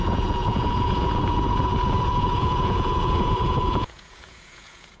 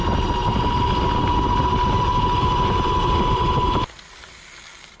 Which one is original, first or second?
second